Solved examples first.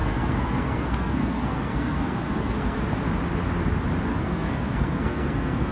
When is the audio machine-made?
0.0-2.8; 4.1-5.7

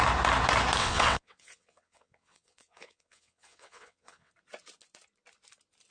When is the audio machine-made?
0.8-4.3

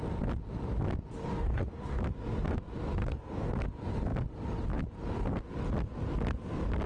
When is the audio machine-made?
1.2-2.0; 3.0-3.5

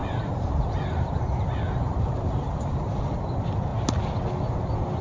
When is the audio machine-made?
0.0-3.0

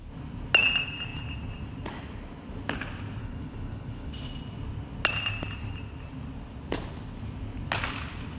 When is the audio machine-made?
3.2-4.1

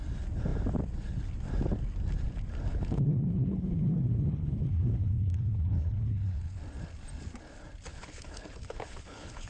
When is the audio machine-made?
2.7-6.6; 7.9-9.5

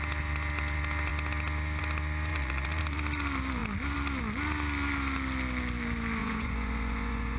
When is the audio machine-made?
2.3-2.8; 6.2-7.4

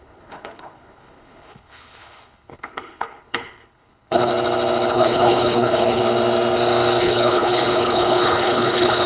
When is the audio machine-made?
0.0-4.3; 4.9-6.0; 7.0-9.1